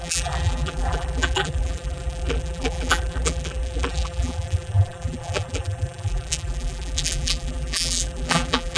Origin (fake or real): fake